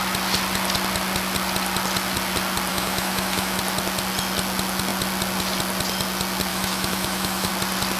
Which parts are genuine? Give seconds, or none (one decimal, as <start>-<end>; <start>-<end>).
0.0-2.7; 3.6-6.5; 7.5-8.0